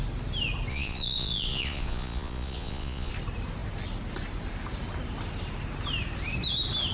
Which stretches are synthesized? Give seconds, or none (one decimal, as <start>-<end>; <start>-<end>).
0.7-3.1